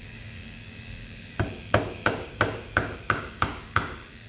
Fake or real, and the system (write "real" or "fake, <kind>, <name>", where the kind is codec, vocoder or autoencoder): fake, codec, DAC